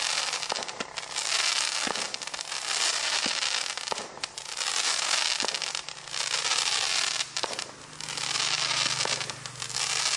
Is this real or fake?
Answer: real